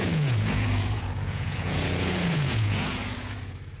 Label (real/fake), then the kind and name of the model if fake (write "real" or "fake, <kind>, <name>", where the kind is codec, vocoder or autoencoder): fake, vocoder, Vocos